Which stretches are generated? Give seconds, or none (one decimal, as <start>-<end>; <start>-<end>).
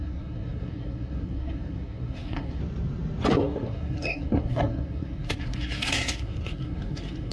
0.0-2.6; 3.3-7.3